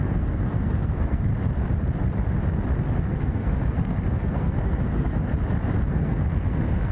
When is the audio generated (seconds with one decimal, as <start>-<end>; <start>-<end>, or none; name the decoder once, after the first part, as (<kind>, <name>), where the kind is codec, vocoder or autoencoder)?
0.0-1.3 (codec, SNAC); 3.0-5.3; 5.9-6.9